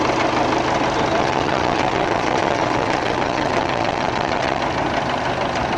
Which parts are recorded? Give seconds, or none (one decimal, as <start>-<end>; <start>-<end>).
0.0-1.2; 4.6-5.8